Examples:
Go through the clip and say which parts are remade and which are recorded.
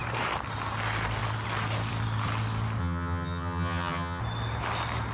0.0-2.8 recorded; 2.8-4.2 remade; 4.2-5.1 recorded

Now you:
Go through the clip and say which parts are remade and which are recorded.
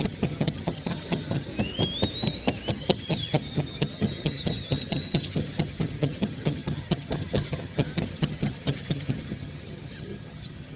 0.0-1.5 remade; 1.5-2.7 recorded; 2.7-10.8 remade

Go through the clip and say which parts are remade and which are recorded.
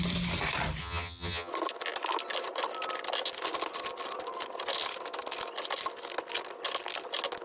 0.0-0.8 recorded; 0.8-1.5 remade; 1.5-7.4 recorded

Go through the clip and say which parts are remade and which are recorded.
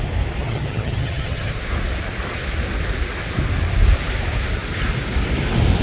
0.0-0.4 recorded; 0.4-1.5 remade; 1.5-5.8 recorded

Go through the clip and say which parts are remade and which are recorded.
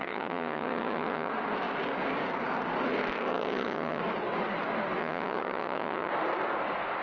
0.0-1.3 remade; 1.3-3.3 recorded; 3.3-4.0 remade; 4.0-5.0 recorded; 5.0-6.1 remade; 6.1-7.0 recorded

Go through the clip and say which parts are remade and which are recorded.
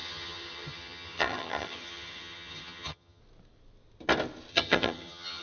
0.0-3.2 remade; 3.2-4.5 recorded; 4.5-5.4 remade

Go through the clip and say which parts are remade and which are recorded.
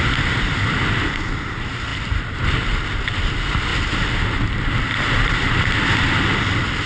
0.0-6.9 recorded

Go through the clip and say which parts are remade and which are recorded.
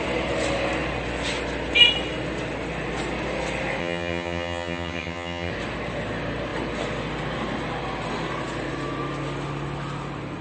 0.0-3.8 recorded; 3.8-5.5 remade; 5.5-10.4 recorded